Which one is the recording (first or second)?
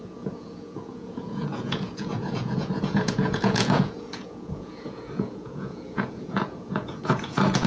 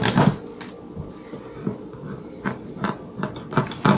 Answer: second